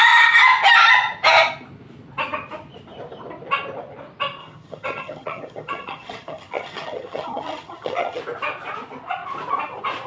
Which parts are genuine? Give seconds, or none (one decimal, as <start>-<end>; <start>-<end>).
0.0-4.4; 8.2-10.1